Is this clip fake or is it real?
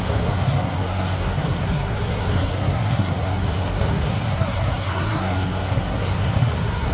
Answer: fake